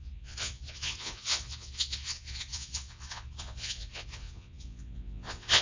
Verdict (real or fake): fake